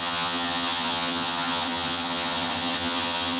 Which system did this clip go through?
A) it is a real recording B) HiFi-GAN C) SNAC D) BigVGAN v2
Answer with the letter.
B